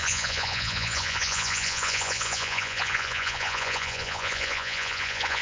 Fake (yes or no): yes